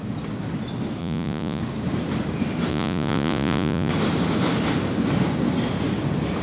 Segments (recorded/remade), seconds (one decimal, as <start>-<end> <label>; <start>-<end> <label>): 0.0-1.0 recorded; 1.0-1.6 remade; 1.6-2.7 recorded; 2.7-3.9 remade; 3.9-6.4 recorded